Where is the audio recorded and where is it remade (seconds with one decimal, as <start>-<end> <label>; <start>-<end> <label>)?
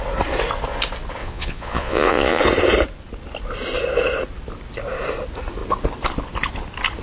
0.0-1.2 recorded; 1.2-2.4 remade; 2.4-7.0 recorded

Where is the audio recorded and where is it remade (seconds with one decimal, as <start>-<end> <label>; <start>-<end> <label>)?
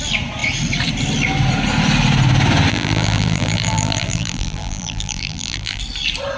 0.0-2.7 recorded; 2.7-5.8 remade; 5.8-6.4 recorded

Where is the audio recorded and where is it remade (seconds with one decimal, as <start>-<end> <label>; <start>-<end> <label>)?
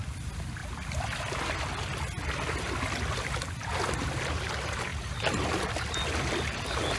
0.0-7.0 recorded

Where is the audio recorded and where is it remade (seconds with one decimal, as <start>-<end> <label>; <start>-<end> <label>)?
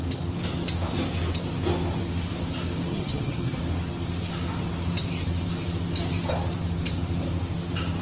0.0-2.9 recorded; 2.9-3.6 remade; 3.6-8.0 recorded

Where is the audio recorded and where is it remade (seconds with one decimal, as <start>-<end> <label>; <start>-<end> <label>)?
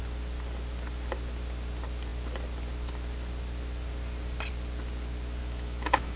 0.0-5.4 recorded; 5.4-6.2 remade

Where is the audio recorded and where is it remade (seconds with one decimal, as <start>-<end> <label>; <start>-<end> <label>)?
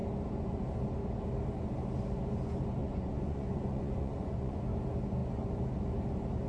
0.0-2.8 recorded; 2.8-4.6 remade; 4.6-6.5 recorded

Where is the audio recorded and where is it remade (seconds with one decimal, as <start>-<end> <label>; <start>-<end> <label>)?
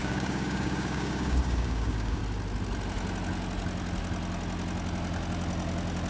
0.0-2.2 remade; 2.2-6.1 recorded